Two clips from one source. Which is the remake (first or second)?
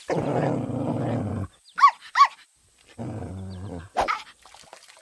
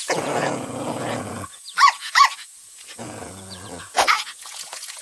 second